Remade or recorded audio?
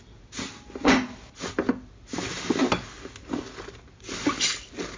recorded